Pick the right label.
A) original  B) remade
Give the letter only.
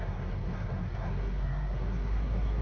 B